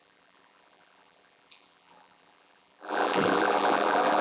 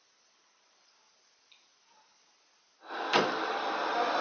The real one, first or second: second